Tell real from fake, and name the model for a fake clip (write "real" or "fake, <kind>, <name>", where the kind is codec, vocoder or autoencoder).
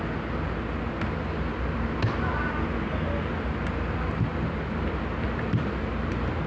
real